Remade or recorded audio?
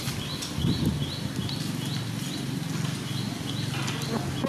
recorded